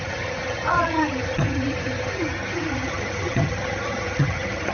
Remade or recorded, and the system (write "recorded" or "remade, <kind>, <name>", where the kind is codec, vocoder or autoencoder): remade, vocoder, HiFi-GAN